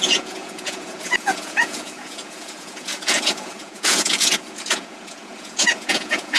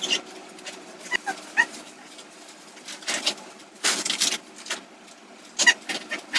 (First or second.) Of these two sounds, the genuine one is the second